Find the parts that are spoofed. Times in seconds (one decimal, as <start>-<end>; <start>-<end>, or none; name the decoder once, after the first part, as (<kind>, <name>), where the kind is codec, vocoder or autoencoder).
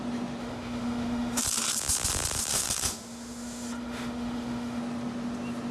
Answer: 0.4-1.4 (autoencoder, DAC-VAE); 2.5-4.8